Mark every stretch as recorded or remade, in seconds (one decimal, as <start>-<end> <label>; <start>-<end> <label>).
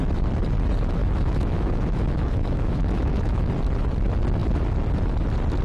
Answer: 0.0-1.0 recorded; 1.0-3.5 remade; 3.5-5.6 recorded